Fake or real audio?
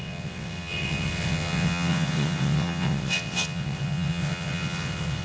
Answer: fake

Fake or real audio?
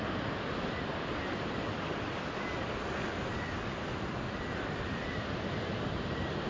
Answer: real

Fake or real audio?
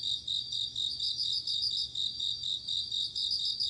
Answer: real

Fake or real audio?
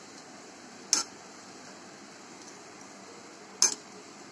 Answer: real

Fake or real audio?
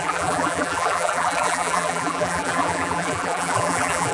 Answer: fake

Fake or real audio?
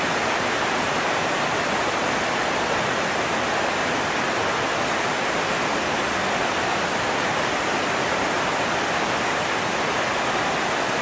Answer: real